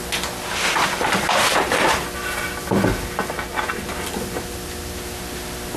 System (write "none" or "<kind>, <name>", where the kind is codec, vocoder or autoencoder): none